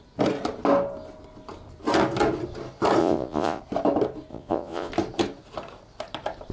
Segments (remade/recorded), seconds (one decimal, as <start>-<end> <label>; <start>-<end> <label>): 0.0-3.0 recorded; 3.0-3.6 remade; 3.6-4.3 recorded; 4.3-4.9 remade; 4.9-6.5 recorded